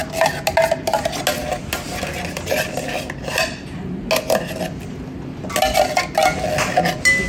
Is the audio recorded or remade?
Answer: recorded